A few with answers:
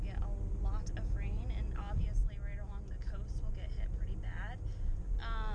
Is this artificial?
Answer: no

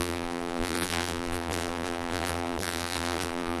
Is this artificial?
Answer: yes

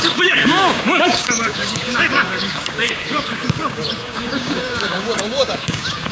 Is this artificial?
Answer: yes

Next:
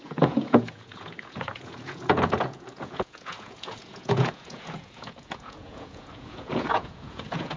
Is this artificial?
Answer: yes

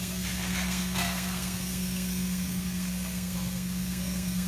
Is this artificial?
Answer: yes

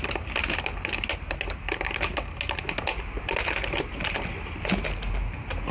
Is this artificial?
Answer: no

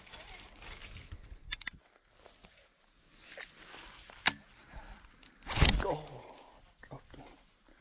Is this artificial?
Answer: no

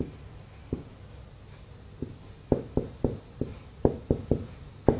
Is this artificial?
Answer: no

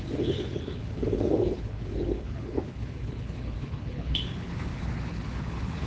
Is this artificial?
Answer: yes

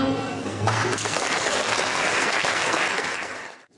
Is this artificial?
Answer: yes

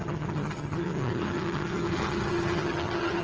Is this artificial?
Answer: yes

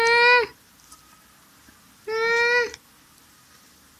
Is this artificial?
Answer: no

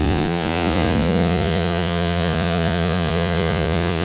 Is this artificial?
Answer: yes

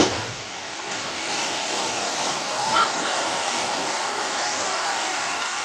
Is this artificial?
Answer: yes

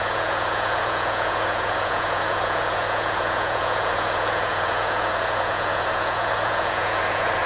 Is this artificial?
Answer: yes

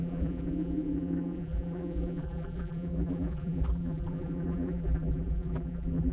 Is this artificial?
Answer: yes